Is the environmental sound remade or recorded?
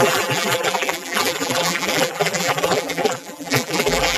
remade